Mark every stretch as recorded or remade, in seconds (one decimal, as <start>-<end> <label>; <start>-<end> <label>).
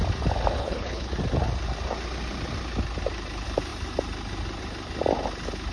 0.0-0.6 recorded; 0.6-1.1 remade; 1.1-5.7 recorded